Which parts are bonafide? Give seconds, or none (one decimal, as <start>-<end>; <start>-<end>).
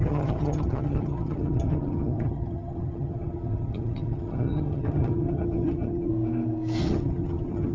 6.1-6.8